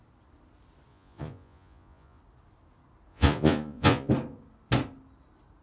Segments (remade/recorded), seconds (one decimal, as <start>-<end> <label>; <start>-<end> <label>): 0.0-0.9 recorded; 0.9-2.2 remade; 2.2-3.1 recorded; 3.1-4.1 remade; 4.1-5.6 recorded